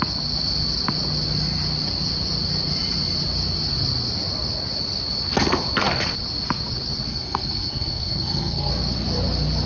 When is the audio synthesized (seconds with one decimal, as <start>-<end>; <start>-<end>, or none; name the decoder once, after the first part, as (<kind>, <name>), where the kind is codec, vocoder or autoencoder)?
7.1-8.7 (codec, SNAC)